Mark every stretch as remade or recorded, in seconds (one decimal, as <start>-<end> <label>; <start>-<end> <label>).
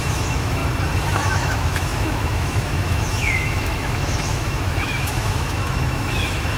0.0-0.6 remade; 0.6-1.1 recorded; 1.1-6.6 remade